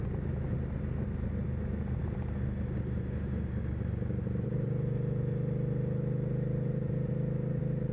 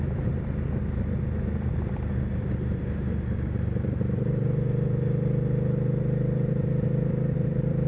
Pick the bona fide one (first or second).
first